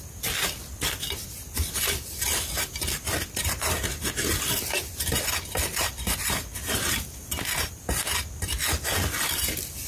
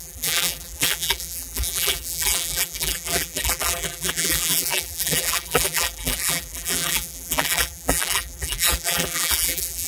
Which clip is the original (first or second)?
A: first